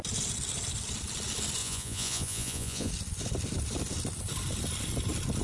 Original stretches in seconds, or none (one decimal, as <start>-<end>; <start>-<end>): 0.0-1.6; 2.9-5.4